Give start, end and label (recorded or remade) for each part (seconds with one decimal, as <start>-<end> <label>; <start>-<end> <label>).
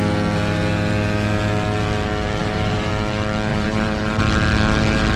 0.0-2.4 recorded; 2.4-2.9 remade; 2.9-3.5 recorded; 3.5-4.2 remade; 4.2-5.2 recorded